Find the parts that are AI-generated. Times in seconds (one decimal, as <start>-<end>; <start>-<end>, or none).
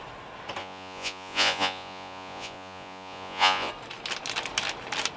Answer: 0.6-3.7